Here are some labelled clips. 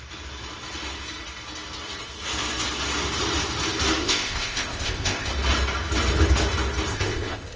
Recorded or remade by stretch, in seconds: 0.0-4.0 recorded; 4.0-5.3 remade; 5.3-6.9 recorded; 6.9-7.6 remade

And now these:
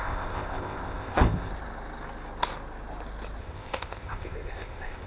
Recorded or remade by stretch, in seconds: 0.0-1.5 remade; 1.5-3.4 recorded; 3.4-5.1 remade

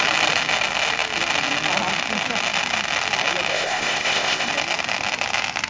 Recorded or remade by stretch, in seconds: 0.0-3.5 recorded; 3.5-4.5 remade; 4.5-5.7 recorded

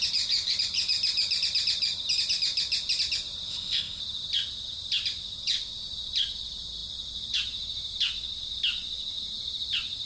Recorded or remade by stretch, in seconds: 0.0-3.5 recorded; 3.5-4.0 remade; 4.0-10.1 recorded

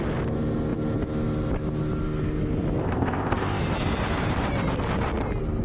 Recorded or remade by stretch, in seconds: 0.0-2.8 recorded; 2.8-3.6 remade; 3.6-5.6 recorded